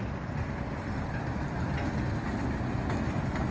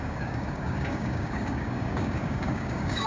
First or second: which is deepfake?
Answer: second